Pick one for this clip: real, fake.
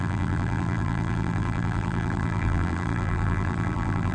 fake